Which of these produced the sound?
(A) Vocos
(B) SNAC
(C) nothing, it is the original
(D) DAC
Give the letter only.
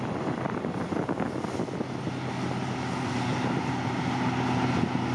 C